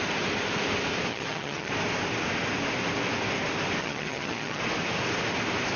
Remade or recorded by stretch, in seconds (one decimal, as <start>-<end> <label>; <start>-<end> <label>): 0.0-1.1 recorded; 1.1-1.7 remade; 1.7-3.8 recorded; 3.8-4.6 remade; 4.6-5.8 recorded